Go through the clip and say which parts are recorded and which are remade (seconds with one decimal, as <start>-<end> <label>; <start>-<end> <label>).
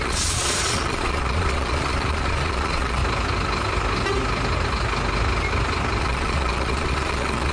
0.0-3.0 remade; 3.0-6.0 recorded; 6.0-7.5 remade